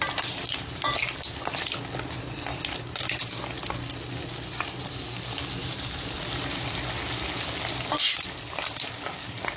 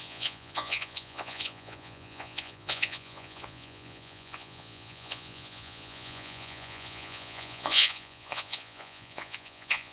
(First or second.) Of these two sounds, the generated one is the second